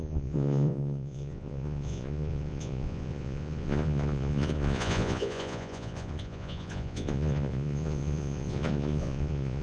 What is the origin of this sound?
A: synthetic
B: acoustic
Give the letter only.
A